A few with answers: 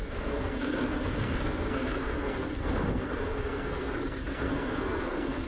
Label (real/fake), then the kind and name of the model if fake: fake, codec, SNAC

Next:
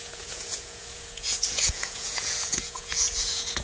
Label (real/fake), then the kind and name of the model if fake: fake, vocoder, Vocos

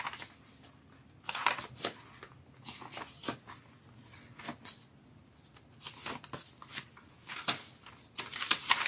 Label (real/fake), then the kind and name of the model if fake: real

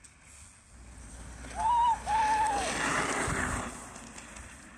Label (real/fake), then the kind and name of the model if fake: real